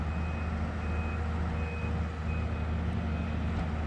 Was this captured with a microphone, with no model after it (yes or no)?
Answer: yes